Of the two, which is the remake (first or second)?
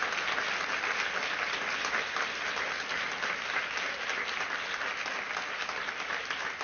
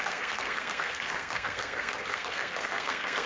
second